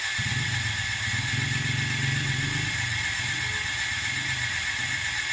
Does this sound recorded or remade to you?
recorded